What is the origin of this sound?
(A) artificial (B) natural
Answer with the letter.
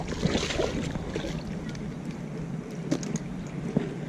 B